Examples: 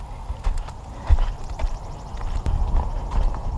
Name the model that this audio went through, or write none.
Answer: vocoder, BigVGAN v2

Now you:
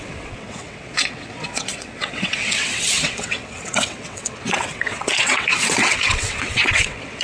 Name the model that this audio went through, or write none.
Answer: vocoder, WaveNeXt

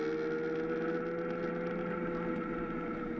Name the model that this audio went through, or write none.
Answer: none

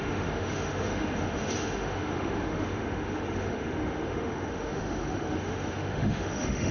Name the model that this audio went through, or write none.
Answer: autoencoder, DAC-VAE